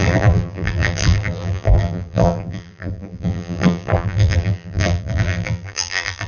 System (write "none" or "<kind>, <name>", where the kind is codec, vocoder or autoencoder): vocoder, BigVGAN v2